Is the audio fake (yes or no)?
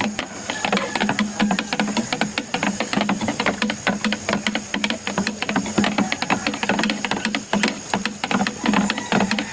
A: no